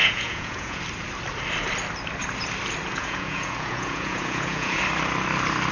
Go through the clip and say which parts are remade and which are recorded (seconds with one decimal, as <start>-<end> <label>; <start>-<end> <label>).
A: 0.0-0.8 remade; 0.8-2.9 recorded; 2.9-4.8 remade; 4.8-5.7 recorded

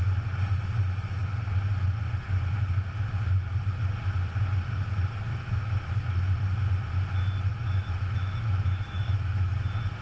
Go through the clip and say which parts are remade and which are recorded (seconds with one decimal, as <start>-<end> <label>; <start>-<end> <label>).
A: 0.0-5.3 recorded; 5.3-5.9 remade; 5.9-7.5 recorded; 7.5-9.5 remade; 9.5-10.0 recorded

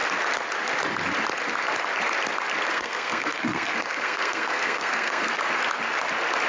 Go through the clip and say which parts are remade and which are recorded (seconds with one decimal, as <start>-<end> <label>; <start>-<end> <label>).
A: 0.0-2.7 recorded; 2.7-5.4 remade; 5.4-6.5 recorded

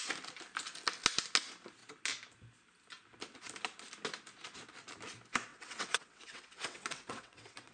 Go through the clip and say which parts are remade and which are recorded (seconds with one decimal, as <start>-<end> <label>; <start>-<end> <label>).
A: 0.0-5.5 recorded; 5.5-7.7 remade

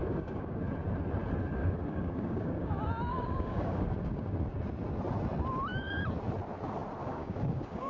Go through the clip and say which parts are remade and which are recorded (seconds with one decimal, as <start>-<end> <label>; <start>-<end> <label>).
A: 0.0-0.6 remade; 0.6-1.6 recorded; 1.6-2.7 remade; 2.7-3.1 recorded; 3.1-4.3 remade; 4.3-7.0 recorded; 7.0-7.9 remade

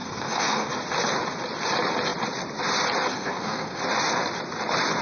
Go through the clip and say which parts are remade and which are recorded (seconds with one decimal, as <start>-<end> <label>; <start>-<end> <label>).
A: 0.0-0.7 remade; 0.7-3.1 recorded; 3.1-3.8 remade; 3.8-5.0 recorded